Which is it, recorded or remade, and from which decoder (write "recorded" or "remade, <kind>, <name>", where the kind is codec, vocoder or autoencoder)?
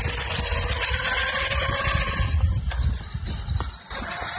recorded